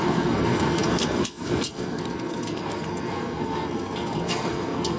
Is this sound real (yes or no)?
no